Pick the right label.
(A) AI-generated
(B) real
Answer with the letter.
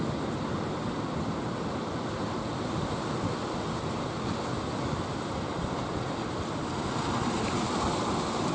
B